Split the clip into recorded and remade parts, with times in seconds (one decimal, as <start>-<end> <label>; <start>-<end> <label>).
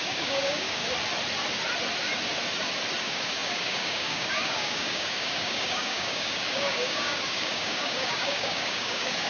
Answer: 0.0-0.8 remade; 0.8-3.0 recorded; 3.0-9.3 remade